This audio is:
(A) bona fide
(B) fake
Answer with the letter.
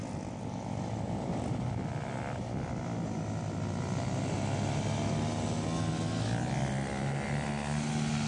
A